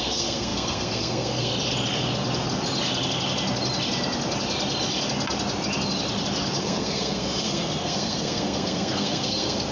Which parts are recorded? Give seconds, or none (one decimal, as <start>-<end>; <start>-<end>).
1.5-6.6